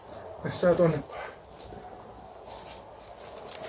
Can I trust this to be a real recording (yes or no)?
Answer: yes